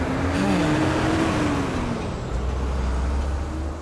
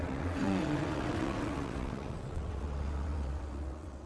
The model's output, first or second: second